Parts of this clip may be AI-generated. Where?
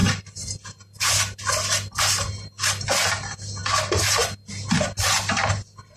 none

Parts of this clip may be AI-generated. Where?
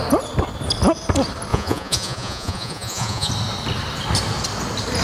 1.5-3.3 (vocoder, Vocos)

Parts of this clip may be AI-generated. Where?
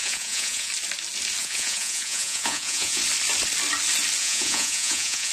0.0-0.7 (vocoder, Vocos); 1.4-3.0; 4.2-5.3